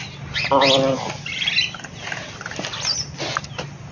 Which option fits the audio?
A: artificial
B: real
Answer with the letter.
B